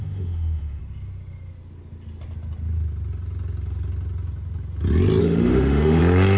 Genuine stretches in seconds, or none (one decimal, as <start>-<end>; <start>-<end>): 0.8-5.2; 6.0-6.4

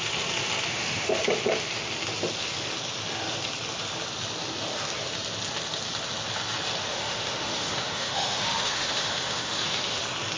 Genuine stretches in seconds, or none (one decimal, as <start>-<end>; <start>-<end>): 0.0-0.7; 1.2-6.9; 10.0-10.4

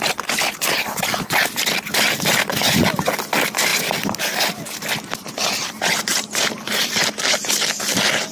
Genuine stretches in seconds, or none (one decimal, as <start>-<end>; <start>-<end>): 0.0-8.3

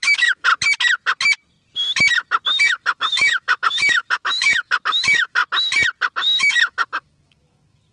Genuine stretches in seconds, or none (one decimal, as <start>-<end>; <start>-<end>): 0.5-2.6; 5.4-6.4

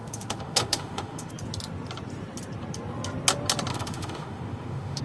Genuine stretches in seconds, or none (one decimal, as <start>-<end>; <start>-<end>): 1.3-3.7

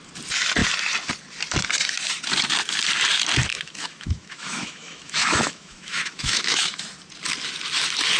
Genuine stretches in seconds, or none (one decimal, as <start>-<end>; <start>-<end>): 0.0-3.5; 6.8-8.2

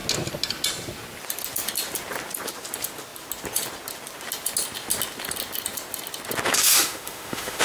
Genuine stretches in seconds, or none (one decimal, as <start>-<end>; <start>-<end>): 0.0-6.6

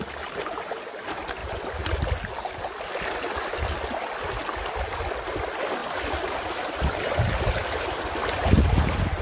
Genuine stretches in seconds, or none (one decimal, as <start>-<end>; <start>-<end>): 0.0-9.2